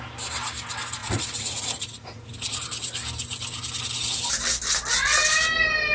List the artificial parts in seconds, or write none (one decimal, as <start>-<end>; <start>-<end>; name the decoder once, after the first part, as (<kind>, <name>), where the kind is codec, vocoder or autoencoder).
1.0-2.6 (vocoder, Vocos)